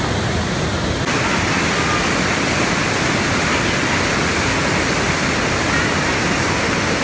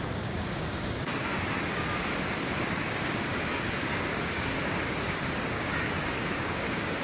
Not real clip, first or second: second